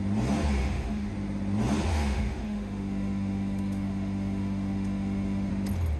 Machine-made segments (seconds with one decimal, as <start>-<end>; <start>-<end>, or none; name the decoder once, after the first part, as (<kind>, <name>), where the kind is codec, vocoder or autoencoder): 0.6-1.1 (autoencoder, DAC-VAE); 1.9-5.5